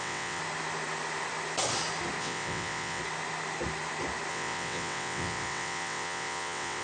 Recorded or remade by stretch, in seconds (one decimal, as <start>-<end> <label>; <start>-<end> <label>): 0.0-0.4 remade; 0.4-2.2 recorded; 2.2-3.0 remade; 3.0-4.3 recorded; 4.3-6.8 remade